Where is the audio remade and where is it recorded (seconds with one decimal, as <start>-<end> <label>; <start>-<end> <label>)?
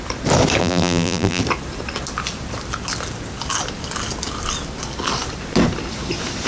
0.0-0.6 recorded; 0.6-1.4 remade; 1.4-6.5 recorded